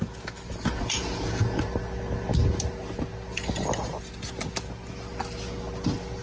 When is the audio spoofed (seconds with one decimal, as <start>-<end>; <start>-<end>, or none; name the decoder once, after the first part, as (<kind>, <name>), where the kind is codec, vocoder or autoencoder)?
0.7-1.6 (vocoder, Vocos)